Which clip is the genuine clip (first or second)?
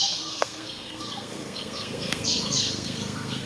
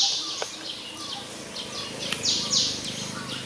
second